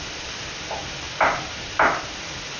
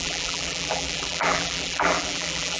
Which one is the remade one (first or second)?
second